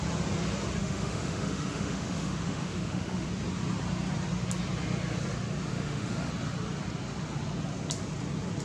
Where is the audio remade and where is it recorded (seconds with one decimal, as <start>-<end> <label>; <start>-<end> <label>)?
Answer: 0.0-0.8 recorded; 0.8-3.3 remade; 3.3-5.7 recorded; 5.7-6.3 remade; 6.3-8.6 recorded